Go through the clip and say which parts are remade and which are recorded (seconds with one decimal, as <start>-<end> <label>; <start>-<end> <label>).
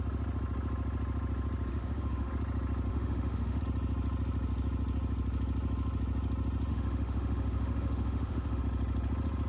0.0-1.7 recorded; 1.7-2.3 remade; 2.3-2.9 recorded; 2.9-3.6 remade; 3.6-6.7 recorded; 6.7-8.6 remade; 8.6-9.5 recorded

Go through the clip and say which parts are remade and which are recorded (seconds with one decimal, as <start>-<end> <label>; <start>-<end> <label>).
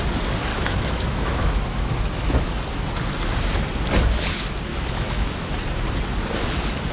0.0-0.5 recorded; 0.5-2.5 remade; 2.5-4.7 recorded; 4.7-5.6 remade; 5.6-6.9 recorded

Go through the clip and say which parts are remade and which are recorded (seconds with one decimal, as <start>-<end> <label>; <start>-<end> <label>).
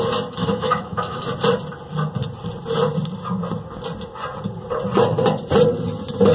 0.0-0.4 recorded; 0.4-1.2 remade; 1.2-6.3 recorded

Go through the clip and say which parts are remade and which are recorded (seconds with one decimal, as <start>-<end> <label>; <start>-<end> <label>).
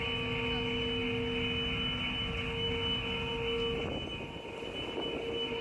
0.0-5.6 recorded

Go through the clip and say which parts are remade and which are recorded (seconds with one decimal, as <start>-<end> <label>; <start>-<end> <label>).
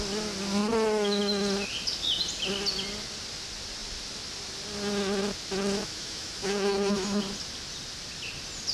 0.0-0.6 recorded; 0.6-1.2 remade; 1.2-5.8 recorded; 5.8-7.2 remade; 7.2-8.7 recorded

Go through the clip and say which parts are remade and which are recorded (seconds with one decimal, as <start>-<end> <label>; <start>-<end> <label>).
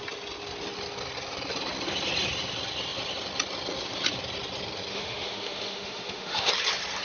0.0-4.9 recorded; 4.9-6.5 remade; 6.5-7.0 recorded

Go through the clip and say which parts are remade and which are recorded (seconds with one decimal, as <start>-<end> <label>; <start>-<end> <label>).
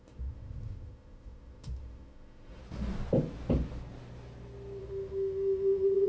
0.0-2.6 remade; 2.6-4.8 recorded; 4.8-6.1 remade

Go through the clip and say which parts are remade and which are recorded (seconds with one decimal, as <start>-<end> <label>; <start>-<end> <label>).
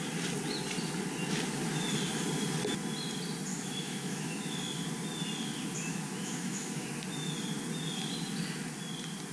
0.0-3.5 recorded; 3.5-4.6 remade; 4.6-5.9 recorded; 5.9-6.9 remade; 6.9-9.3 recorded